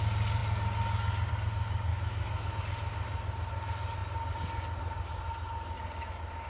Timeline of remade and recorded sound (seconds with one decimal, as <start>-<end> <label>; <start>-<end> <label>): 0.0-1.9 recorded; 1.9-2.6 remade; 2.6-6.5 recorded